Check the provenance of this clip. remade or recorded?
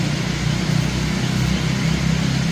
recorded